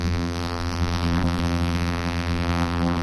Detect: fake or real fake